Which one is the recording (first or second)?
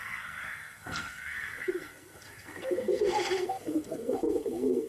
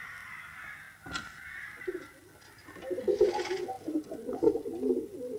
second